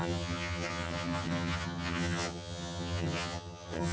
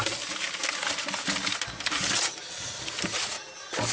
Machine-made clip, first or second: first